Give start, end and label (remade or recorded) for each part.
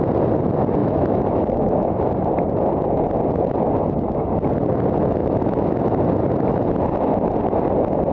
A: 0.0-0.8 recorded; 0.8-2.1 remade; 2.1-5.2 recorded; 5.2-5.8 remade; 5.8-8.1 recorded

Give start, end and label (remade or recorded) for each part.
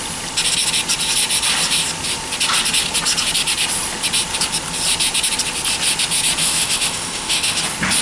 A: 0.0-6.4 recorded; 6.4-7.6 remade; 7.6-8.0 recorded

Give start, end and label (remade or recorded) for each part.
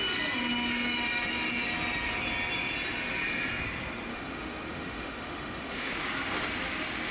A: 0.0-4.1 recorded; 4.1-5.9 remade; 5.9-7.1 recorded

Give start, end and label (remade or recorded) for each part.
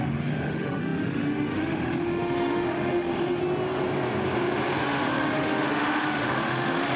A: 0.0-3.4 remade; 3.4-4.8 recorded; 4.8-7.0 remade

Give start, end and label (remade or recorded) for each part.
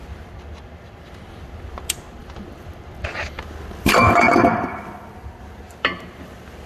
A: 0.0-6.7 recorded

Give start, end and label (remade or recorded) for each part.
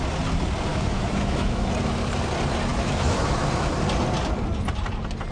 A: 0.0-0.7 recorded; 0.7-1.7 remade; 1.7-2.7 recorded; 2.7-3.2 remade; 3.2-5.3 recorded